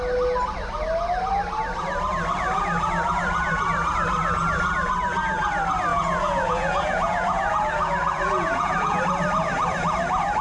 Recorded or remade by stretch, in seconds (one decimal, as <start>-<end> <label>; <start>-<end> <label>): 0.0-5.9 recorded; 5.9-9.0 remade; 9.0-10.4 recorded